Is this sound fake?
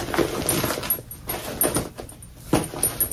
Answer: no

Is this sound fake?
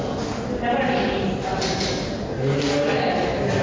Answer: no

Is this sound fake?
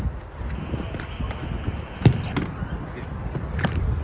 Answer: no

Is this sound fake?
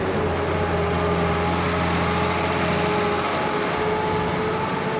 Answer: no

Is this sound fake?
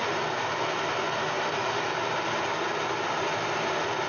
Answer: no